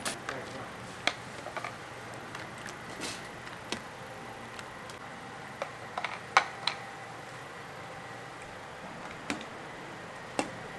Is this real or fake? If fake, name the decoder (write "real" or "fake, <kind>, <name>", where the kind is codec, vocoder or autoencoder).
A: real